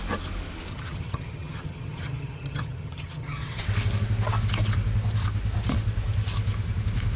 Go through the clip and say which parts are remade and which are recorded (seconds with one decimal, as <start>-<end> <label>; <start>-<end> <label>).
0.0-0.7 recorded; 0.7-3.6 remade; 3.6-7.2 recorded